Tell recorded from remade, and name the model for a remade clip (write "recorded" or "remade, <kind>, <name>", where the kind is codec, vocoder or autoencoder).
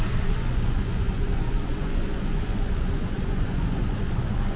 remade, vocoder, Vocos